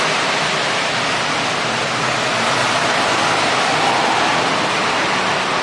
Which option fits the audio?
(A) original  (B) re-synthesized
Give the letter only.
A